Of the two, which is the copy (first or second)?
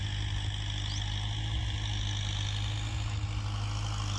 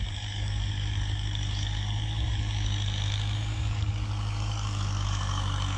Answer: second